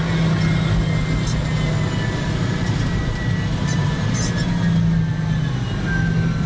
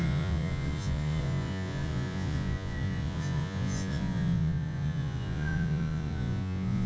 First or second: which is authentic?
first